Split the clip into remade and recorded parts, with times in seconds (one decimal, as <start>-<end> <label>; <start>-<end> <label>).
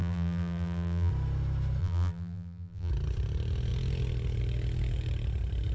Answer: 0.0-1.1 remade; 1.1-1.8 recorded; 1.8-2.9 remade; 2.9-5.7 recorded